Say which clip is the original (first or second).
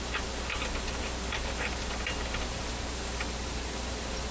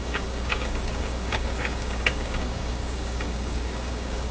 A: first